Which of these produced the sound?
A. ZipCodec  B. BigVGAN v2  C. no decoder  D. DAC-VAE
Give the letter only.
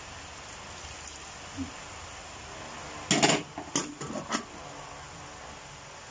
C